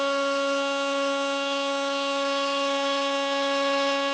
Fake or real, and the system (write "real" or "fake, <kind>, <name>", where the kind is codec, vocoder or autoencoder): fake, autoencoder, DAC-VAE